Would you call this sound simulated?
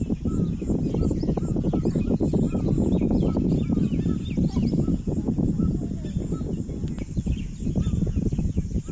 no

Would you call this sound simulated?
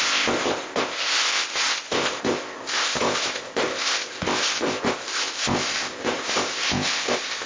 yes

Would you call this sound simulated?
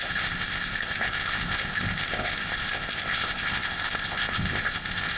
yes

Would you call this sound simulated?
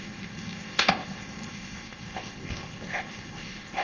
yes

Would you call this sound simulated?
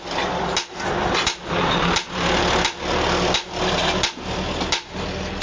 no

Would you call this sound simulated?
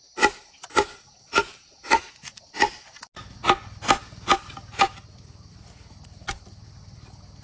no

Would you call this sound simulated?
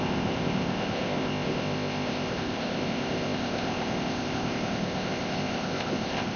yes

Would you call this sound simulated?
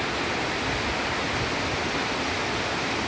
no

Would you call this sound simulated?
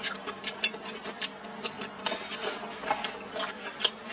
no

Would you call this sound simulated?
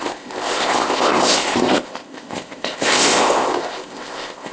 yes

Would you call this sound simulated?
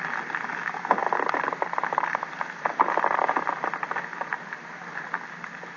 no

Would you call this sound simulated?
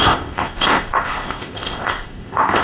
yes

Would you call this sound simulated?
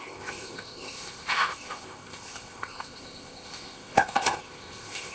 yes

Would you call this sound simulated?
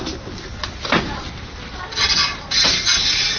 no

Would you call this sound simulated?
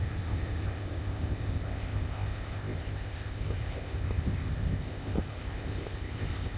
yes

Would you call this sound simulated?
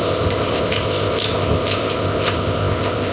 yes